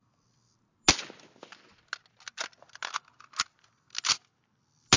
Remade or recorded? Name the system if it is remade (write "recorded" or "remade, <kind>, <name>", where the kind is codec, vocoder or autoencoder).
recorded